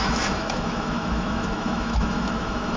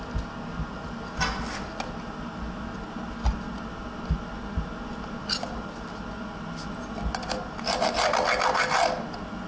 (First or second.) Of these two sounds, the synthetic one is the first